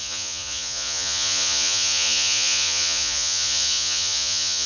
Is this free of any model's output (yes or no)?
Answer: no